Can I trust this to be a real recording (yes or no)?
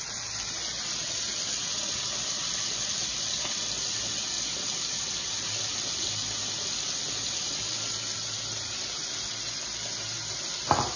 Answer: yes